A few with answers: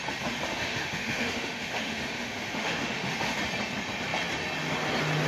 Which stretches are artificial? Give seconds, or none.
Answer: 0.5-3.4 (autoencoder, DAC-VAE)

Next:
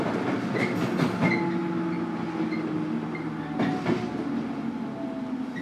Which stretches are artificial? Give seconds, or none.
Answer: none

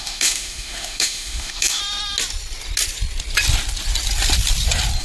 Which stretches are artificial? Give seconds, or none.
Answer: 0.0-1.8 (autoencoder, DAC-VAE)

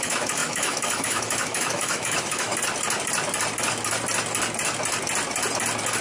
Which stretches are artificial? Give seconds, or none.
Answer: 0.0-2.5 (autoencoder, DAC-VAE)